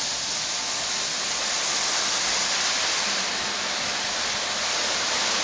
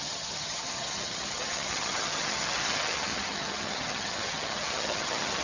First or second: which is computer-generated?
second